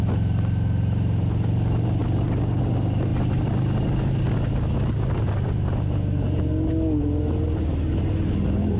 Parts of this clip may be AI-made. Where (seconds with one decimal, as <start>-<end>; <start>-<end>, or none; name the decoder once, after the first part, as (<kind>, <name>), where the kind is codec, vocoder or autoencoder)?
none

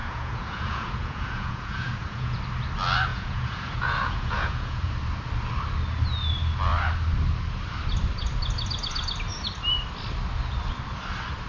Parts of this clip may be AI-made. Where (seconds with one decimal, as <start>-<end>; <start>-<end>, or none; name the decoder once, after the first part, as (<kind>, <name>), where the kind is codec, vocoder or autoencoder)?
0.0-2.4 (vocoder, Vocos); 3.1-4.9

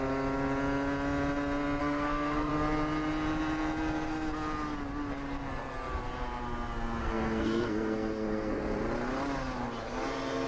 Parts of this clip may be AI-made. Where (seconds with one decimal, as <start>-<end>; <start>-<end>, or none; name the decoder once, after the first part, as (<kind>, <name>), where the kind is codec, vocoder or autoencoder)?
1.8-2.5 (codec, SNAC); 7.0-8.6

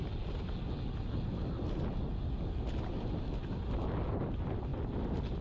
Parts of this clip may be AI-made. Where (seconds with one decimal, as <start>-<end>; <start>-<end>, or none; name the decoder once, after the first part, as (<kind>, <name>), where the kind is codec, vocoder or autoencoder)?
none

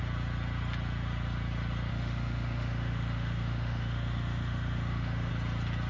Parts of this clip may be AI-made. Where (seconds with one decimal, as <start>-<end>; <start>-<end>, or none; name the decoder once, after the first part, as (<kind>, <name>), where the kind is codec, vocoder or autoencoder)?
1.9-5.3 (autoencoder, DAC-VAE)

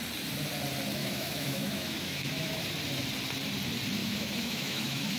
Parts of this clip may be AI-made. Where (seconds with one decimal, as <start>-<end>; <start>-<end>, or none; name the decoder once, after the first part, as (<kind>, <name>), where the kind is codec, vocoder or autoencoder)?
1.0-2.6 (autoencoder, DAC-VAE); 4.0-5.2

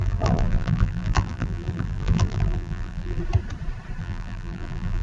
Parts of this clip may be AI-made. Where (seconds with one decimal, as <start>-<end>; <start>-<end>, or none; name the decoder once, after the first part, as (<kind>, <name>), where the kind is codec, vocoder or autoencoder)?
0.0-3.2 (vocoder, BigVGAN v2); 4.0-5.0